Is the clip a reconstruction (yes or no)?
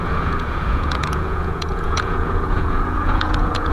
yes